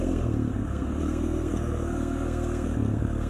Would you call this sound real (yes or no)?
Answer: no